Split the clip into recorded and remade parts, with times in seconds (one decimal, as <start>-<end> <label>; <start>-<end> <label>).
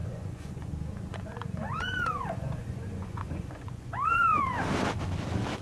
0.0-0.7 remade; 0.7-1.1 recorded; 1.1-4.5 remade; 4.5-5.6 recorded